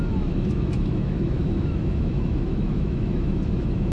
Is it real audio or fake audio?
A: fake